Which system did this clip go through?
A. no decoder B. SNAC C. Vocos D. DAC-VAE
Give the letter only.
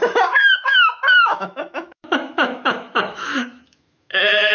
D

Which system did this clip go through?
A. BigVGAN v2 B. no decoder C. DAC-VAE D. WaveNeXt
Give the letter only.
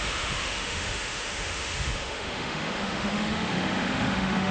C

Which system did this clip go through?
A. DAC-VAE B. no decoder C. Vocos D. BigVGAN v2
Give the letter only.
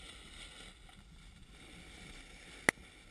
B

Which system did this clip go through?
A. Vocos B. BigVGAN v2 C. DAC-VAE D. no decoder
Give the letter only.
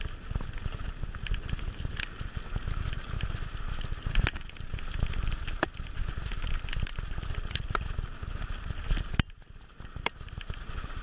D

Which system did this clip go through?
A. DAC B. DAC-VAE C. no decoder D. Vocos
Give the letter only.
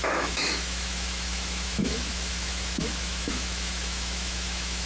B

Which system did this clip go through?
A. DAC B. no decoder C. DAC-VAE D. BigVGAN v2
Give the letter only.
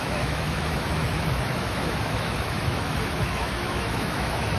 C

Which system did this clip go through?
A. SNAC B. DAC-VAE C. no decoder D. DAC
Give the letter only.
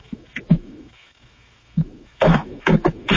B